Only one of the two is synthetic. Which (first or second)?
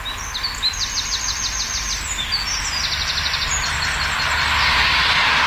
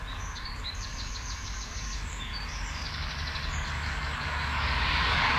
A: second